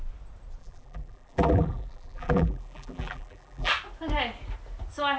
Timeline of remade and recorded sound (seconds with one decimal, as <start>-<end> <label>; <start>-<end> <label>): 0.0-0.6 recorded; 0.6-3.7 remade; 3.7-5.2 recorded